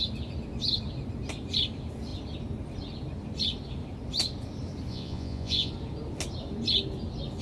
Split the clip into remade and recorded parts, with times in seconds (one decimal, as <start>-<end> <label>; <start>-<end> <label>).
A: 0.0-4.9 recorded; 4.9-5.7 remade; 5.7-7.4 recorded